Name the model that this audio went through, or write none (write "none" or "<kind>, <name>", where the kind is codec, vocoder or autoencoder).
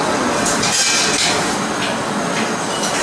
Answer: none